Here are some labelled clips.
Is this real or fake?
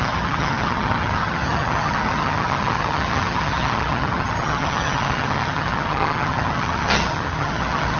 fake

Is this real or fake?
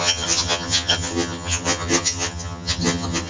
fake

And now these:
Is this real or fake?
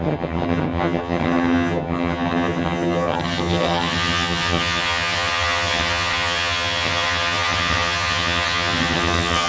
fake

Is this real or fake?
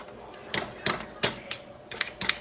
real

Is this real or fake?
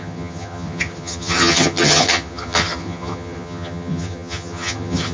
fake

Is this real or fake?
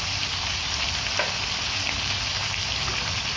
real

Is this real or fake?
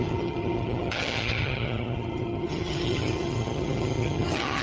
fake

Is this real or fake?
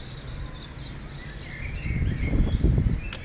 real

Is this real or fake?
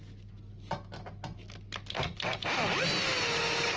real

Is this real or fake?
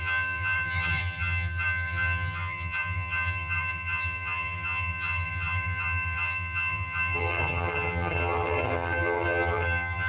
fake